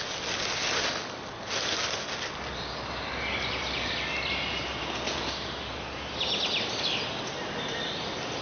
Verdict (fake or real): real